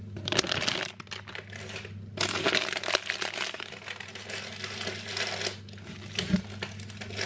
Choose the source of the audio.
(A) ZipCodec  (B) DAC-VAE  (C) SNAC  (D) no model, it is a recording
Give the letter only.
D